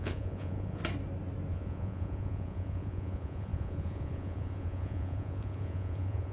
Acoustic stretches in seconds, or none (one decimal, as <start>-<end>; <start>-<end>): 0.8-1.5